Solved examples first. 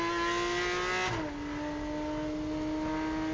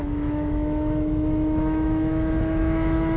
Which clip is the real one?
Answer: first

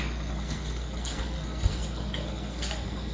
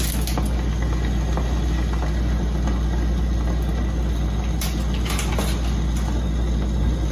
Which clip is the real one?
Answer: second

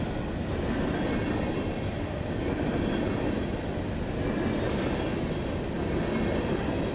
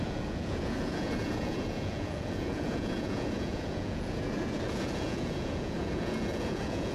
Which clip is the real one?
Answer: first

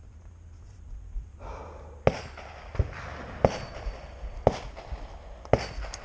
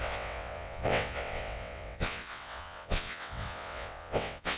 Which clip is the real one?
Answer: first